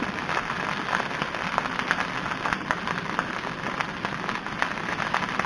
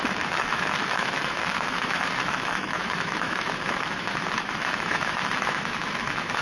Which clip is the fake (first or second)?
second